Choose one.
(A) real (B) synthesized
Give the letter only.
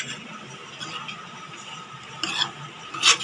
A